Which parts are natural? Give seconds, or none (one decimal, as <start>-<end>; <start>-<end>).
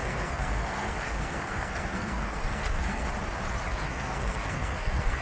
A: 3.1-3.7